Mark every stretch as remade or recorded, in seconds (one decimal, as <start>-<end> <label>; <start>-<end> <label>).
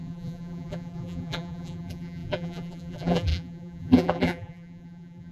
0.0-5.3 remade